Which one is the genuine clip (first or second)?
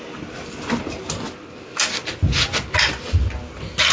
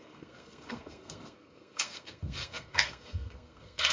first